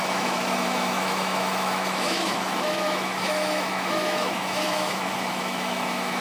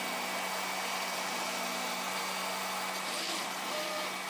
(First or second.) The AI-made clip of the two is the first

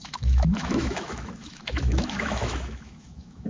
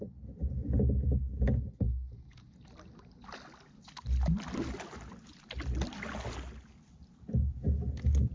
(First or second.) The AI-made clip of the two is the first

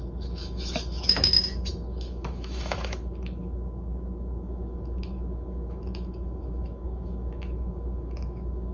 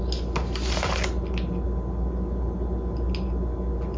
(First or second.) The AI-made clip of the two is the first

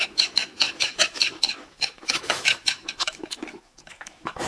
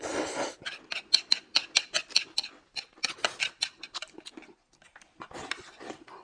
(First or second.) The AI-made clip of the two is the first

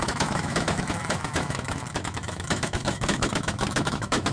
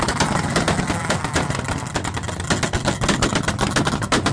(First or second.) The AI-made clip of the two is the first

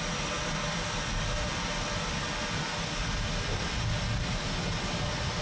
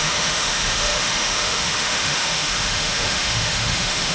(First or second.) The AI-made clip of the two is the second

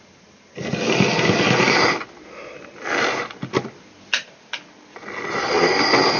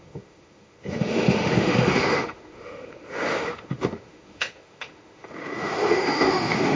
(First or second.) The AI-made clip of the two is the second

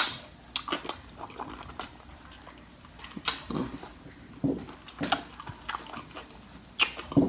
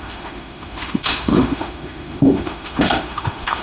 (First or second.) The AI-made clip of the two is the second